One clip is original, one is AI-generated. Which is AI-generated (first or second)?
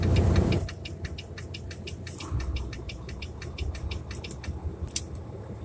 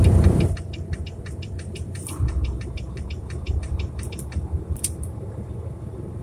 second